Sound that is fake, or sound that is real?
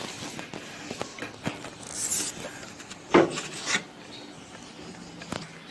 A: real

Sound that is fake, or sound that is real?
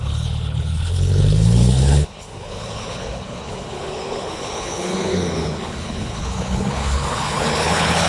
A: fake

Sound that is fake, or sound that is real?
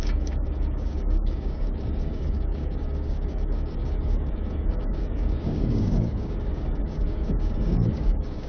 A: fake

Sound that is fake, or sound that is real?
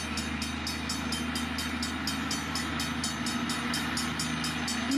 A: real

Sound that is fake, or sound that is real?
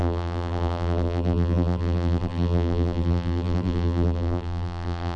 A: fake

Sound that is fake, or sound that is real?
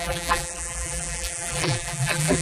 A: fake